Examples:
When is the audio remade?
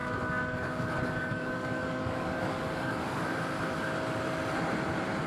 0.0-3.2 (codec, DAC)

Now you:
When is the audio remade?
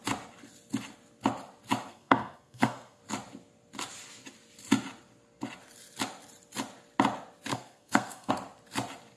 1.9-3.0 (codec, SNAC); 7.5-8.3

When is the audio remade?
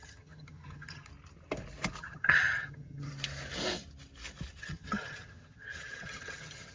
0.0-1.1 (vocoder, HiFi-GAN); 2.0-3.1; 4.6-6.7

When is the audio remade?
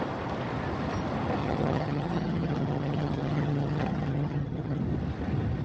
1.4-4.8 (vocoder, HiFi-GAN)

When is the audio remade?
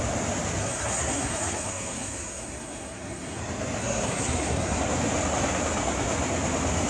0.6-3.4 (codec, SNAC); 3.8-4.8